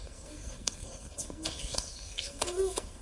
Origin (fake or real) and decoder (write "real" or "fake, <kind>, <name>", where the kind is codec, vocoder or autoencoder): fake, codec, SNAC